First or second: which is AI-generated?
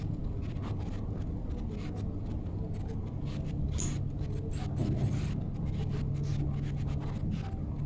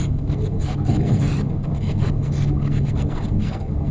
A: second